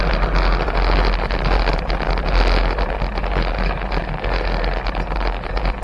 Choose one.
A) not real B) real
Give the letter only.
B